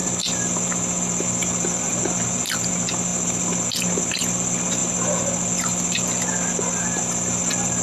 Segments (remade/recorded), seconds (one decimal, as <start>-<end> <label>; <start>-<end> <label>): 0.0-7.8 recorded

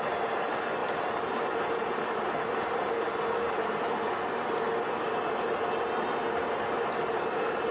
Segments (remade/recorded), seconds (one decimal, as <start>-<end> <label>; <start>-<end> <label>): 0.0-7.7 recorded

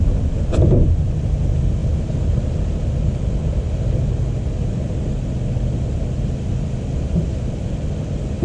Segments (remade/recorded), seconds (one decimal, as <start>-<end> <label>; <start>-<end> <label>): 0.0-8.4 recorded

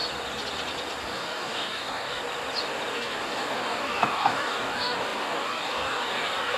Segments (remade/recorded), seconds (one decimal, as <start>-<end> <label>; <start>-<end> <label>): 0.0-1.0 recorded; 1.0-2.2 remade; 2.2-2.9 recorded; 2.9-6.6 remade

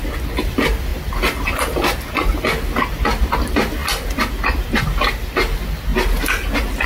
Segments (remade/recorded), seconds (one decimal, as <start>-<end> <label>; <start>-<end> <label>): 0.0-6.9 recorded

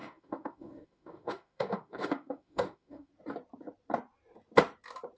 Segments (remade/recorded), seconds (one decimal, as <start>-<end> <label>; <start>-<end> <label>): 0.0-3.1 remade; 3.1-5.2 recorded